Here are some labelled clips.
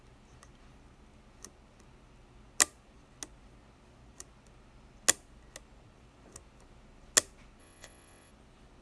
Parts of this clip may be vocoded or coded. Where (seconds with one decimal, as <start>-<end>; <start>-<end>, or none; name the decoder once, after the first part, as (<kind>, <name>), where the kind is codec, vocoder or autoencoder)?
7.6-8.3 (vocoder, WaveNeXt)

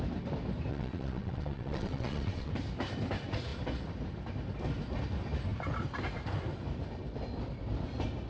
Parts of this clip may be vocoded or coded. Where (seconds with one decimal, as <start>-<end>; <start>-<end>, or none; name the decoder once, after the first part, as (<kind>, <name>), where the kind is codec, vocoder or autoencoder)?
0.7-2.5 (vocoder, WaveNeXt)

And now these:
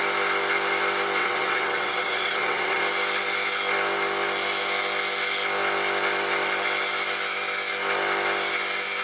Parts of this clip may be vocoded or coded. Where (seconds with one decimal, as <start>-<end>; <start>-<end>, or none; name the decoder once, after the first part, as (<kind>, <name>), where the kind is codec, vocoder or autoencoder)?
1.2-2.8 (vocoder, WaveNeXt)

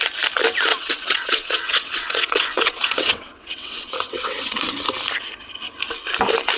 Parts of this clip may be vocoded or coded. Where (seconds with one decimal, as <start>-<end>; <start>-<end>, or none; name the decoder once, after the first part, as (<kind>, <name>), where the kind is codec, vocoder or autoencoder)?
0.7-4.7 (vocoder, WaveNeXt)